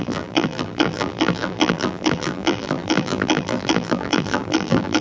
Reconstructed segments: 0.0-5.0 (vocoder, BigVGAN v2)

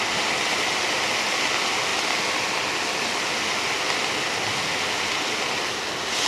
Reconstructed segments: none

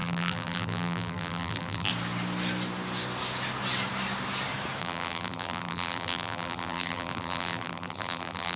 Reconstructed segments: 0.0-1.9 (vocoder, BigVGAN v2); 4.8-8.6

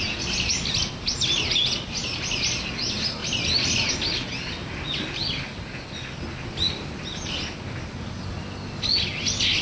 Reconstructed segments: none